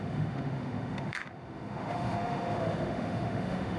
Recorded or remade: remade